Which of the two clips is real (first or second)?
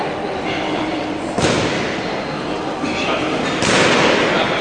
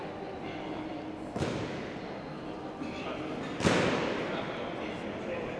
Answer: second